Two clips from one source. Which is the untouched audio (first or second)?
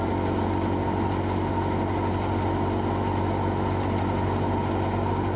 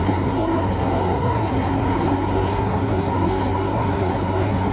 first